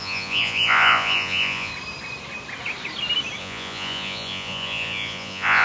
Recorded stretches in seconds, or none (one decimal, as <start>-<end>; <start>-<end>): 1.7-3.4